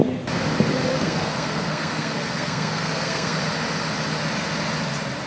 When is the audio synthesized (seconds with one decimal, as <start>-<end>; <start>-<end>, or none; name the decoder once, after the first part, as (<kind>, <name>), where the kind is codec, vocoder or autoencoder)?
0.9-3.4 (codec, SNAC)

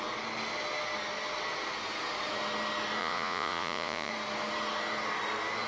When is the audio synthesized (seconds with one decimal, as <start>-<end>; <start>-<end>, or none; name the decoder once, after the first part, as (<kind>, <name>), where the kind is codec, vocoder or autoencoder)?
3.0-4.1 (vocoder, Vocos)

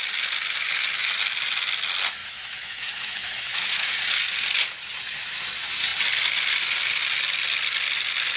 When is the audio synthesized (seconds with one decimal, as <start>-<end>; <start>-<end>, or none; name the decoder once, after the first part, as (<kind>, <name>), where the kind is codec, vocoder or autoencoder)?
2.2-3.9 (autoencoder, DAC-VAE)

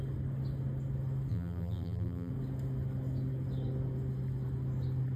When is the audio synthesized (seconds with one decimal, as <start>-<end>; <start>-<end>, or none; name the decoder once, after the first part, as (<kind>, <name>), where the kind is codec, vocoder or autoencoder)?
1.3-2.3 (vocoder, BigVGAN v2)

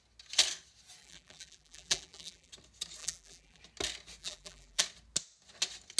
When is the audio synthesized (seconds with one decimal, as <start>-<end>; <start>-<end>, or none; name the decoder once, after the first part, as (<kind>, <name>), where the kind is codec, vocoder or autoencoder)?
1.0-2.5 (vocoder, BigVGAN v2); 3.0-3.6; 4.2-4.8

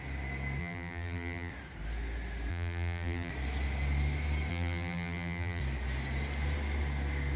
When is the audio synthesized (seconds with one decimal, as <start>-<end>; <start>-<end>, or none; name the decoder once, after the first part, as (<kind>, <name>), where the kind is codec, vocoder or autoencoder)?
0.6-1.5 (vocoder, BigVGAN v2); 2.5-3.3; 4.5-5.6

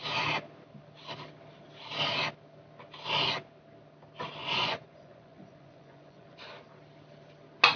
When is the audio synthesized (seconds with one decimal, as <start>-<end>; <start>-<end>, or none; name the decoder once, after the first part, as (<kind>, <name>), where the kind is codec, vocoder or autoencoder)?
4.4-6.5 (vocoder, Vocos)

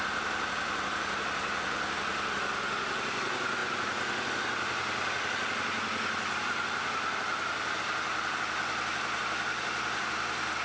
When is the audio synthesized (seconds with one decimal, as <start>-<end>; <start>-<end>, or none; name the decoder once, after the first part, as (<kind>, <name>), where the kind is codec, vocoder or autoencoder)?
none